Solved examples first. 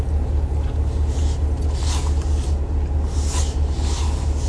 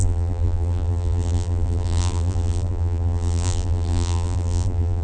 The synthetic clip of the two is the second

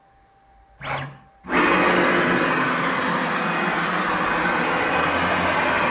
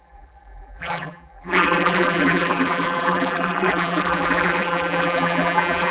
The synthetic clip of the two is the second